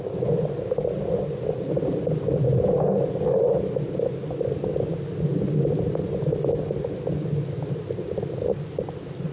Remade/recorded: recorded